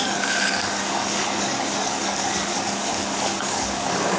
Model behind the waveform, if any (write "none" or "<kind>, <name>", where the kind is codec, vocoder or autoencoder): codec, DAC